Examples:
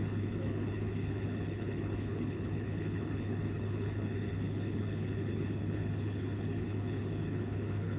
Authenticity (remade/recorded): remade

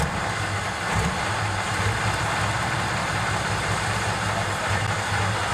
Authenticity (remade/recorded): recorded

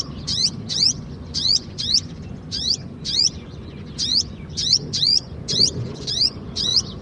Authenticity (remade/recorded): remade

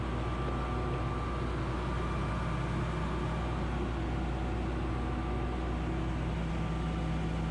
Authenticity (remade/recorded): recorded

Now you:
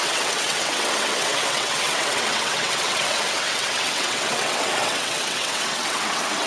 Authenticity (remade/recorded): remade